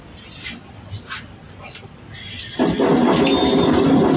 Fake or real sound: real